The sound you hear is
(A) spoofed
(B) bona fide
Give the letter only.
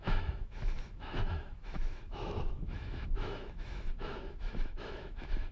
A